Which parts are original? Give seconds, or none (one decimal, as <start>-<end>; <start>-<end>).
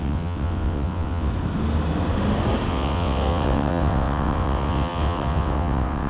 1.3-2.7